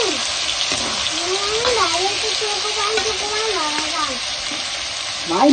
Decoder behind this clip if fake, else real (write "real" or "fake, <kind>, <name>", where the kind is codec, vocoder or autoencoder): real